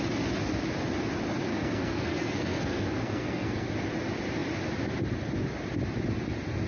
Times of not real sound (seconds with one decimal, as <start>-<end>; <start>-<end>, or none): 1.5-3.7